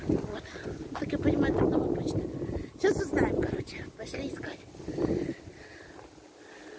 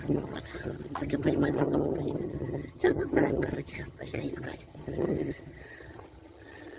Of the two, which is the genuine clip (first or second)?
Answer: first